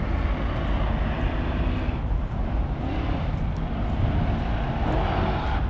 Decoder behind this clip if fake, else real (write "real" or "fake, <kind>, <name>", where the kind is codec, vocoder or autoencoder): real